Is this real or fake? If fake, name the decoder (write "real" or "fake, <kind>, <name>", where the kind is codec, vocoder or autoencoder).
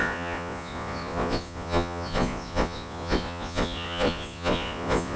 fake, vocoder, Vocos